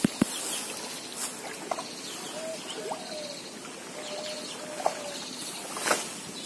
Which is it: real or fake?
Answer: real